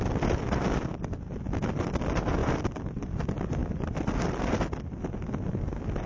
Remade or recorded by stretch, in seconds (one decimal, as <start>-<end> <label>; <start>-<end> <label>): 0.0-3.6 recorded; 3.6-4.3 remade; 4.3-6.1 recorded